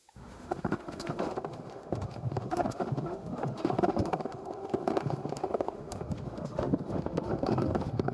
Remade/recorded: remade